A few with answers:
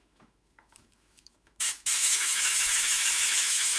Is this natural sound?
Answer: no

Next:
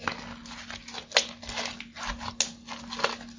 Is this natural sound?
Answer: yes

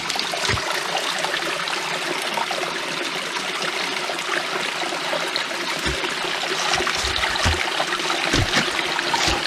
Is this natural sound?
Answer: yes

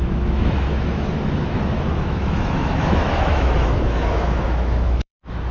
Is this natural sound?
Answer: no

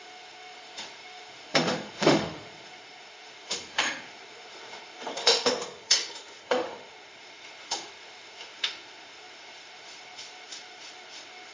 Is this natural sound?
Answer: no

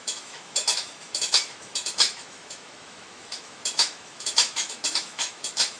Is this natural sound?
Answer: no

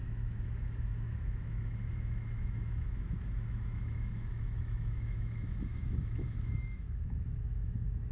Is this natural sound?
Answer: no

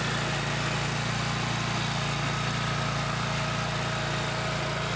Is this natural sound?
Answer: yes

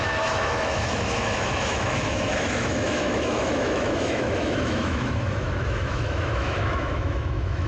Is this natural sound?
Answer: no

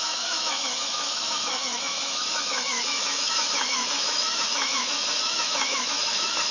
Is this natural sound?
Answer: no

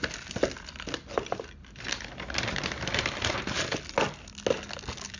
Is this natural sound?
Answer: yes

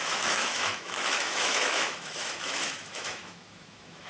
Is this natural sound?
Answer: no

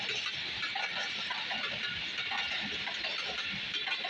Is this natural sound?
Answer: yes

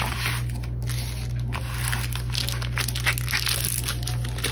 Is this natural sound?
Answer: yes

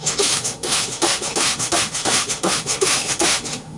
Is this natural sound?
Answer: no